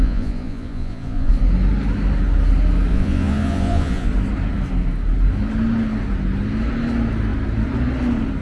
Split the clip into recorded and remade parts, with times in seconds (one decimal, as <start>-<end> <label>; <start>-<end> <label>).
0.0-1.3 remade; 1.3-2.9 recorded; 2.9-4.1 remade; 4.1-8.4 recorded